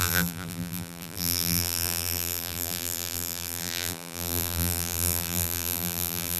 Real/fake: fake